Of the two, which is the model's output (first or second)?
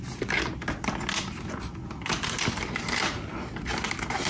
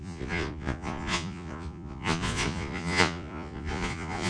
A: second